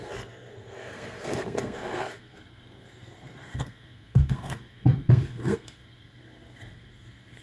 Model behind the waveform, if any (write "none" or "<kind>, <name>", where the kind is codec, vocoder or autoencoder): codec, SNAC